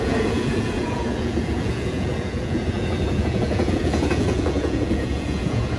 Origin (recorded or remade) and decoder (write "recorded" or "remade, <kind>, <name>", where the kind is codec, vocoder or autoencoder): remade, vocoder, Vocos